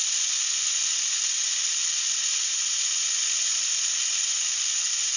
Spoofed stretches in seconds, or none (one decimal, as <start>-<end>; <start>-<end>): none

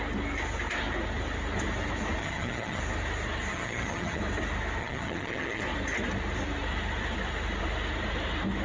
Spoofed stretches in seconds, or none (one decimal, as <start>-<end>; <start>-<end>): 2.2-2.8; 3.5-4.2; 4.8-5.6